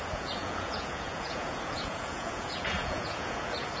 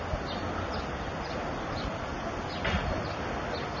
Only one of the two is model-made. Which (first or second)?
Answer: first